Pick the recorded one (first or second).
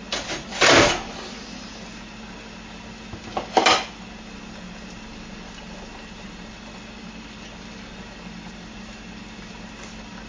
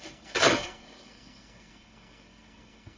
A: first